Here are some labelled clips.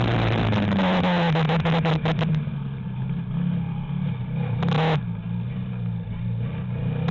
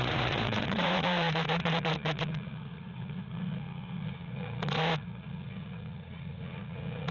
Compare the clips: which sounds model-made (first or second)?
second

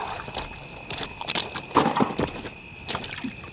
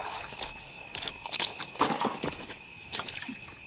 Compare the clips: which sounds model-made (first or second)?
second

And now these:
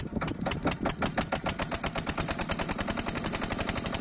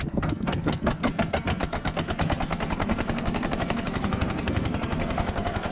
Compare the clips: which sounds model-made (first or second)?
second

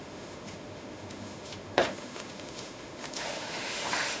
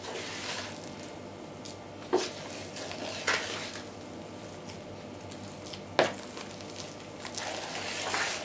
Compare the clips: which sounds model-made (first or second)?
first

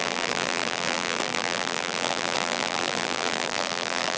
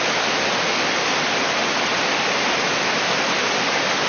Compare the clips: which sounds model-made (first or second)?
first